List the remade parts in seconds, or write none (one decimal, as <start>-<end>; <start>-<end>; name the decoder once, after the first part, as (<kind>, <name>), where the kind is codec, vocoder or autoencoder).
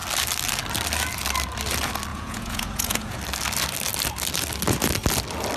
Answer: 2.1-3.2 (vocoder, Vocos)